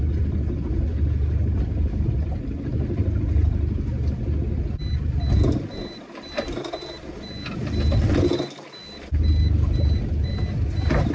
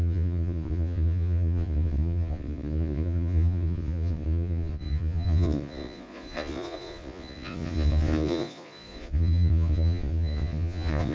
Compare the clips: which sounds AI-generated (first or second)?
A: second